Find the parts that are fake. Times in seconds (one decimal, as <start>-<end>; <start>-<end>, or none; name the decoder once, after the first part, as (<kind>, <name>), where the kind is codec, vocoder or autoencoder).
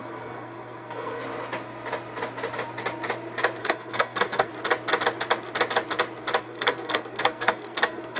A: 0.0-1.2 (codec, SNAC); 3.6-4.5; 6.4-8.2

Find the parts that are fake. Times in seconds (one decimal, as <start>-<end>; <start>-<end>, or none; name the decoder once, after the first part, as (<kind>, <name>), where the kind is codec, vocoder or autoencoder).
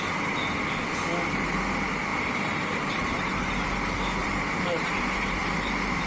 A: 2.1-3.5 (vocoder, BigVGAN v2); 4.2-4.9; 5.4-6.1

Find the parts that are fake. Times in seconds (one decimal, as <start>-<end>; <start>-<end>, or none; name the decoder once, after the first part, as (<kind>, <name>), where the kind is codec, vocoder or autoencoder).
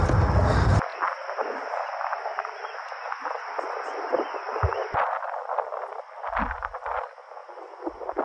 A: none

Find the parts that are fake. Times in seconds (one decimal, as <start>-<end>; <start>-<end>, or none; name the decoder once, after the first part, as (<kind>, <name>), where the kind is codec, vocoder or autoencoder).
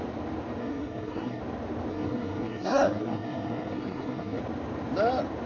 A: 0.6-1.4 (codec, SNAC); 1.9-4.4